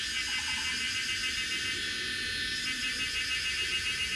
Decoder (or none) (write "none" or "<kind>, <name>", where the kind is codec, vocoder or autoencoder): none